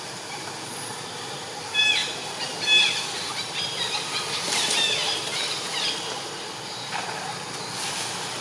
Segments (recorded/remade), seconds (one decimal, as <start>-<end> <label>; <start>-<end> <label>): 0.0-8.4 recorded